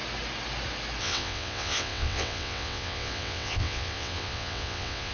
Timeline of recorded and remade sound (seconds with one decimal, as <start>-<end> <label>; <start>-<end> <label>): 0.0-1.0 recorded; 1.0-5.1 remade